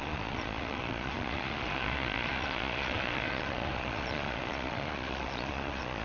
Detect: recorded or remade remade